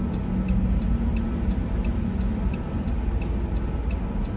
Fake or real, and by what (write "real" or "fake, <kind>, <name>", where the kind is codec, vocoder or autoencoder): real